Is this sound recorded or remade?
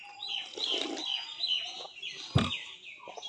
recorded